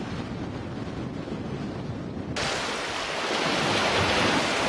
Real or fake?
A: real